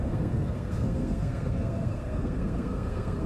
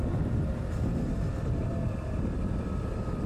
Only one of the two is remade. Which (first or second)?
first